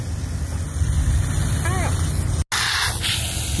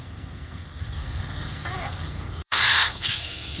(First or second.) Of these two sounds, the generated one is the second